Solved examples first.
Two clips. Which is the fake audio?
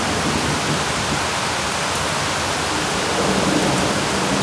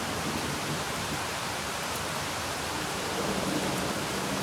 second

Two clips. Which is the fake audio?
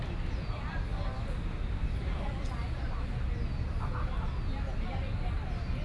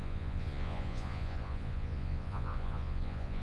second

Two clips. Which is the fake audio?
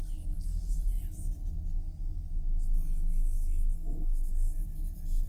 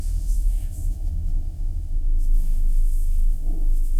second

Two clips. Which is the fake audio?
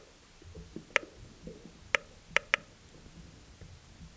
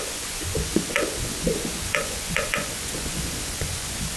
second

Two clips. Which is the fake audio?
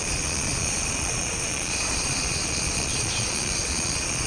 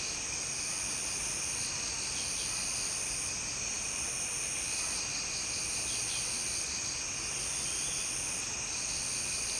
first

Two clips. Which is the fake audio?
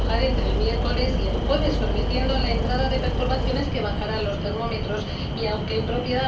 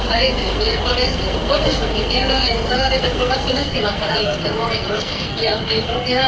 second